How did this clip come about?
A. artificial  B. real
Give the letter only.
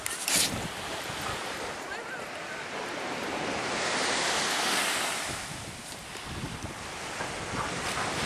B